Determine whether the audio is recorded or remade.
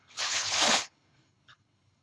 remade